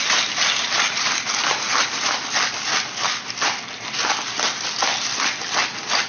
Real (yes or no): no